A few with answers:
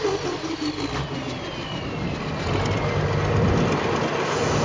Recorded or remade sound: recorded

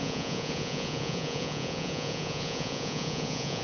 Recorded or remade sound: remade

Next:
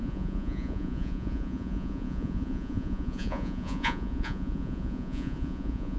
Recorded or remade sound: remade